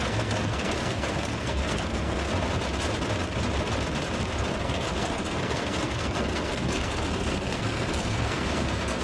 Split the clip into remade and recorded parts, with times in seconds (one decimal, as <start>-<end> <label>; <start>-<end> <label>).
0.0-2.3 remade; 2.3-4.6 recorded; 4.6-9.0 remade